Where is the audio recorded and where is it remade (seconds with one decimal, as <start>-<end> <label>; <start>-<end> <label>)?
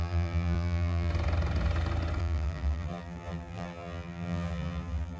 0.0-1.1 remade; 1.1-2.2 recorded; 2.2-5.2 remade